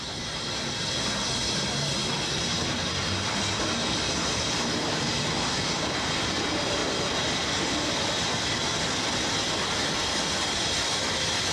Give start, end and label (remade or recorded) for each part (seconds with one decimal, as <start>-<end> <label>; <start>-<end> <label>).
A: 0.0-11.5 recorded